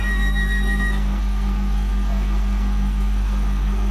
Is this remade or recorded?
remade